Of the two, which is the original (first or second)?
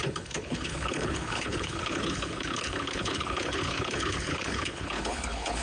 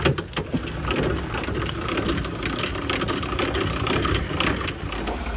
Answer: second